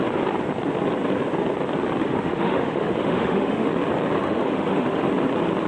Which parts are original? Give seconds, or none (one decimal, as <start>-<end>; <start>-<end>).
0.0-2.0; 3.7-4.2; 5.1-5.7

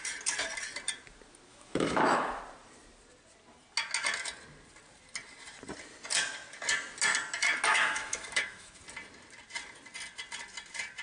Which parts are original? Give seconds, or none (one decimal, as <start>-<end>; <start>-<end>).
0.0-1.5; 2.4-7.7; 8.8-11.0

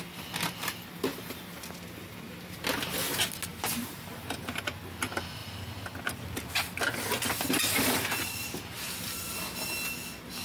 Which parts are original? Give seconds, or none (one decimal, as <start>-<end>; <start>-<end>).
0.0-3.5; 4.6-10.4

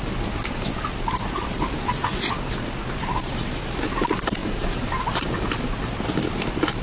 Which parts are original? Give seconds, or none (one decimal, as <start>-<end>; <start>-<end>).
0.0-4.4; 5.8-6.8